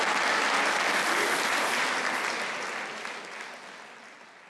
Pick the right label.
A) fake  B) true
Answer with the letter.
B